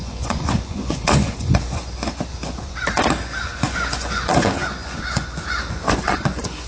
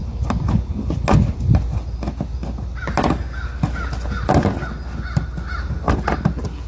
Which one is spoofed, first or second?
first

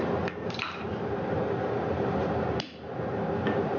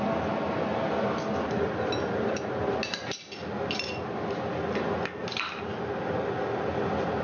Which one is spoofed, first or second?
first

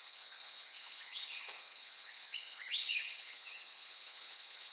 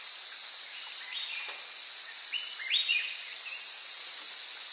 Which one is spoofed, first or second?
first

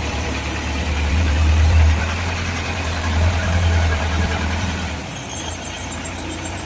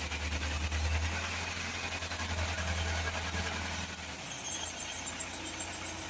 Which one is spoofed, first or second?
first